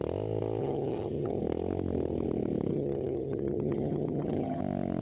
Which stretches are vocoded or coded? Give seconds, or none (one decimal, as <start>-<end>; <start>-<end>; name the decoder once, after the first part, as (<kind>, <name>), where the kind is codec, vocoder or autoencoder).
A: 0.6-1.4 (vocoder, HiFi-GAN); 2.7-4.6